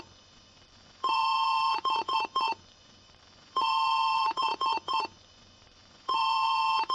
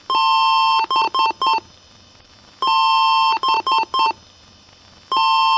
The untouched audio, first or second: second